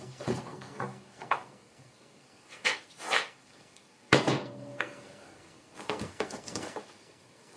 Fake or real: fake